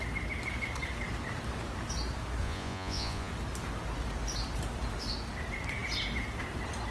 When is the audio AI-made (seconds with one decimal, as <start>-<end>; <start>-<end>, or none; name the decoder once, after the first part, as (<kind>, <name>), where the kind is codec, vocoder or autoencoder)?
2.4-3.3 (vocoder, Vocos)